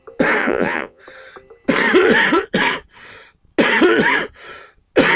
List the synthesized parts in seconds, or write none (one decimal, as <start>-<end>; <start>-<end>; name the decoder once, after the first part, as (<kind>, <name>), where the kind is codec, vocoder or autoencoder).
0.4-1.0 (vocoder, Vocos)